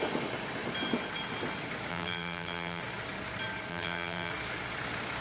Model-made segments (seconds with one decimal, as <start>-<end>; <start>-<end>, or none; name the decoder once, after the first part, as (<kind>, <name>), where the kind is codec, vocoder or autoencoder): 1.9-2.8 (vocoder, BigVGAN v2); 3.7-4.3